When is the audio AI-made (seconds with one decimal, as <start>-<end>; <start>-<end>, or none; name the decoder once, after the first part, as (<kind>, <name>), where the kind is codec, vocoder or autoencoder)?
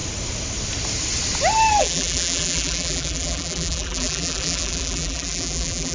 1.8-5.9 (vocoder, BigVGAN v2)